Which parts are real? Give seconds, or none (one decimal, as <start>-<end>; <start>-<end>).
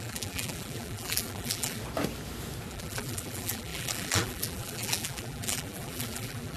1.8-2.7